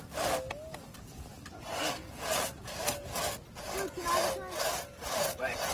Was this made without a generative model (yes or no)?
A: yes